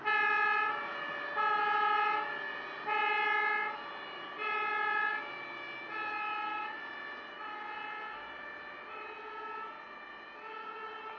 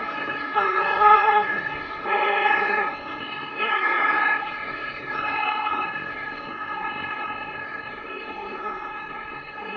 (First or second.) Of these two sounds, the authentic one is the first